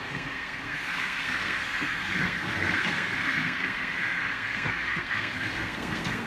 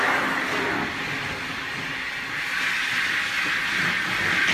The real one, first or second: second